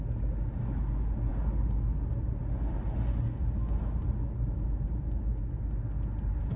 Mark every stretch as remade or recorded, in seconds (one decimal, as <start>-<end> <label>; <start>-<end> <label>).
0.0-6.6 recorded